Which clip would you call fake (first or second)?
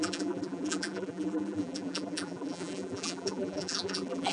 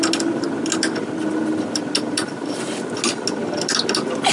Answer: first